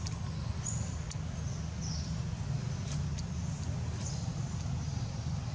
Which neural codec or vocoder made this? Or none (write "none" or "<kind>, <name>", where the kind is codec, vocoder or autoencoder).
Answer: none